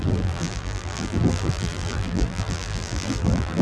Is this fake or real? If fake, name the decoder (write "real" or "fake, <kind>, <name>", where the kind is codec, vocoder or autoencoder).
fake, vocoder, BigVGAN v2